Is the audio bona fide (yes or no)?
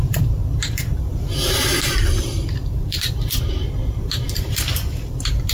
no